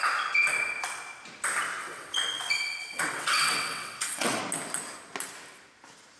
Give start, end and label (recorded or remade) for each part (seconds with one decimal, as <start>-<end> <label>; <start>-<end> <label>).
0.0-1.8 recorded; 1.8-4.4 remade; 4.4-6.2 recorded